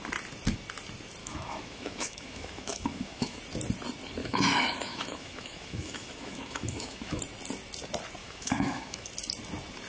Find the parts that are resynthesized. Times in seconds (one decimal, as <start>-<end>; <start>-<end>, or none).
1.2-3.4; 4.2-7.2; 8.2-9.1